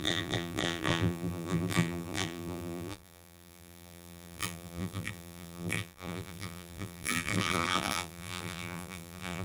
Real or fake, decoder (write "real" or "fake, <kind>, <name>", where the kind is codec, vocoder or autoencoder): fake, vocoder, BigVGAN v2